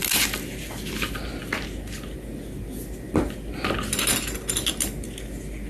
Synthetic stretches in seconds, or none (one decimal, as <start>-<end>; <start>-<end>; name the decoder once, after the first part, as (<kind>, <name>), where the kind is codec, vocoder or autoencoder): none